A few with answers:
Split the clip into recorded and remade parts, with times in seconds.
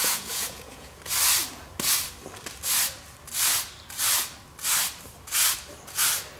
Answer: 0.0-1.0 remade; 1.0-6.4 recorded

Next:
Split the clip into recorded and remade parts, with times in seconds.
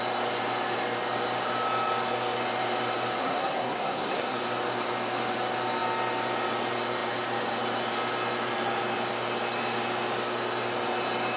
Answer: 0.0-3.2 recorded; 3.2-4.4 remade; 4.4-11.4 recorded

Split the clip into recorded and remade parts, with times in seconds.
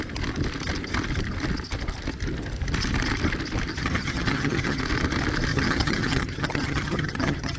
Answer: 0.0-3.7 recorded; 3.7-4.8 remade; 4.8-5.5 recorded; 5.5-7.6 remade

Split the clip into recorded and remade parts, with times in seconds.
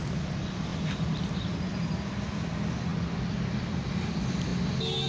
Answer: 0.0-0.7 recorded; 0.7-1.7 remade; 1.7-5.1 recorded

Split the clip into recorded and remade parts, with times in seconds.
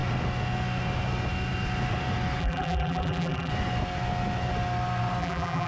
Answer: 0.0-2.4 recorded; 2.4-3.5 remade; 3.5-5.2 recorded; 5.2-5.7 remade